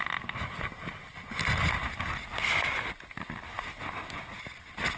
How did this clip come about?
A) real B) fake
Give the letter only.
A